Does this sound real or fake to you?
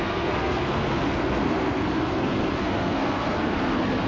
fake